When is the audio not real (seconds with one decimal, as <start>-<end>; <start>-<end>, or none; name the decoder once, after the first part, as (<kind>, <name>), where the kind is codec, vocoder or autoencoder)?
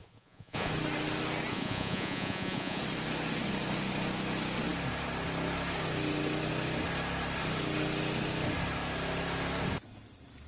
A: 0.0-0.7 (vocoder, Vocos); 1.5-2.8